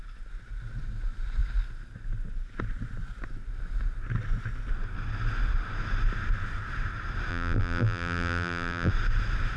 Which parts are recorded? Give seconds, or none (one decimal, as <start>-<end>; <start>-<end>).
0.0-7.3; 8.9-9.6